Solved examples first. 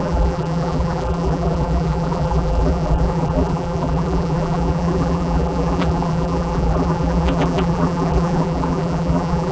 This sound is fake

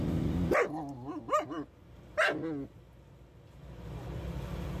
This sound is real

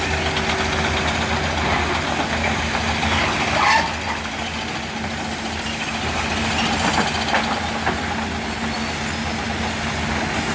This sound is real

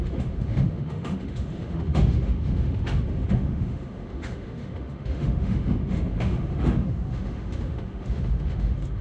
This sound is fake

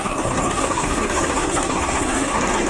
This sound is fake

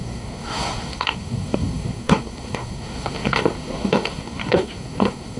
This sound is fake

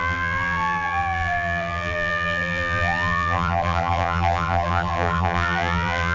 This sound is fake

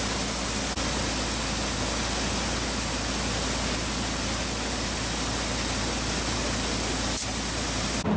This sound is real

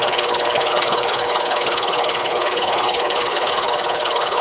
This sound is fake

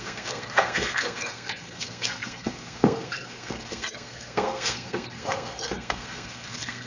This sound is fake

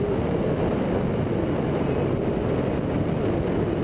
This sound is real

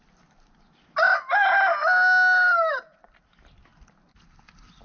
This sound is real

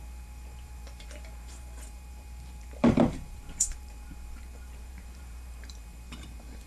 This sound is fake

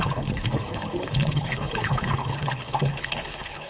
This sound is fake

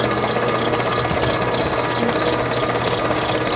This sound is real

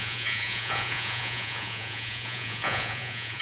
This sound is fake